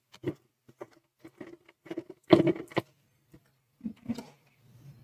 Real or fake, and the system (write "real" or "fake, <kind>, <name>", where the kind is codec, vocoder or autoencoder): real